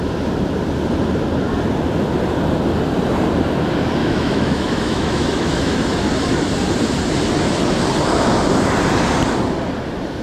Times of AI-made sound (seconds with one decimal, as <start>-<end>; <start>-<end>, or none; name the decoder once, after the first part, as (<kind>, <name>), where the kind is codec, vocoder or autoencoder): 4.0-5.9 (autoencoder, DAC-VAE)